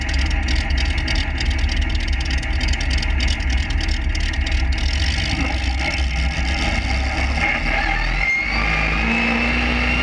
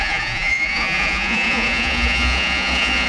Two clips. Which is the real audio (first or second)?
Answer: first